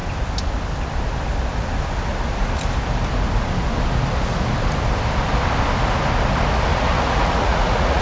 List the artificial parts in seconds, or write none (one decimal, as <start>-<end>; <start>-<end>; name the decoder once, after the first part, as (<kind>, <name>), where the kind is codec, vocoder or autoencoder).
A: 6.7-8.0 (vocoder, Vocos)